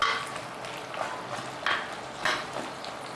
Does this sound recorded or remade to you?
recorded